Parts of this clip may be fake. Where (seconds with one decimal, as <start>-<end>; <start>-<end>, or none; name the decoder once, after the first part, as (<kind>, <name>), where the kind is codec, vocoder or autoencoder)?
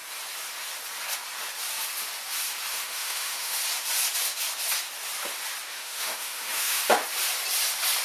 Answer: 2.7-3.6 (autoencoder, DAC-VAE); 5.7-6.8